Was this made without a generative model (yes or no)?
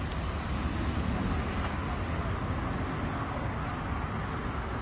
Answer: yes